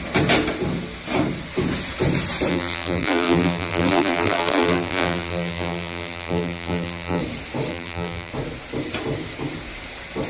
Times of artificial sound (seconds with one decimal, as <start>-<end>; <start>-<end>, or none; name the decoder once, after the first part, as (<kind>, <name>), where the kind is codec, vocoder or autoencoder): 2.5-7.2 (vocoder, BigVGAN v2); 7.7-8.3

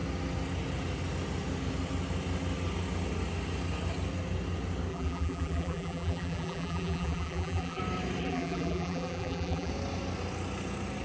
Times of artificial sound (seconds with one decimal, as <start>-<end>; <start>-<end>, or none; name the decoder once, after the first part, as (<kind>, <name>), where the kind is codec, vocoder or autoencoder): 4.9-7.8 (vocoder, BigVGAN v2); 8.2-9.7